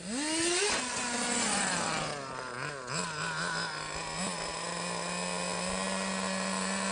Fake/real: real